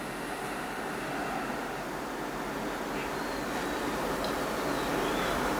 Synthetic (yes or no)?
no